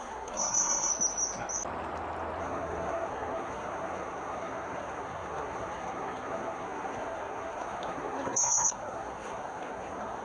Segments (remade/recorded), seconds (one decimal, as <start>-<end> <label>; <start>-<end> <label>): 0.0-0.9 remade; 0.9-2.4 recorded; 2.4-10.2 remade